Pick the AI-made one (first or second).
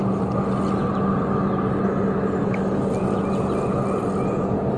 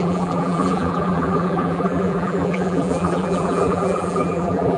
second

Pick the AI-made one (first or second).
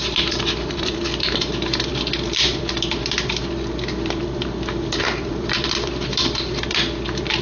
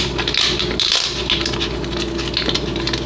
first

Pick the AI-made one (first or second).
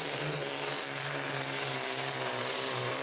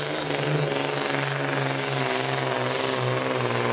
first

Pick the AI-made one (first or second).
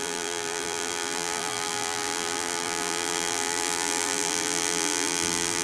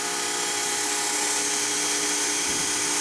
first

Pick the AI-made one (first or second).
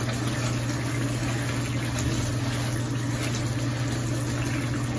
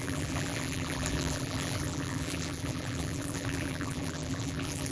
second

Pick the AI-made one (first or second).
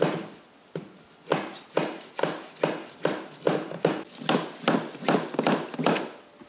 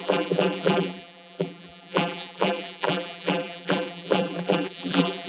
second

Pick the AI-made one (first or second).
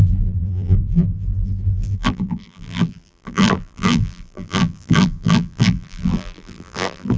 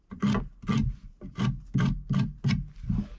first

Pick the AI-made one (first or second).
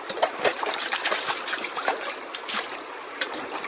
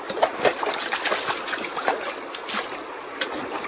first